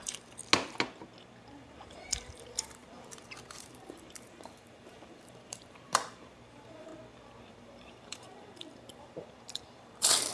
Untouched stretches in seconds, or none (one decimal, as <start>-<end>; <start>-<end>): 0.4-1.5; 6.9-7.5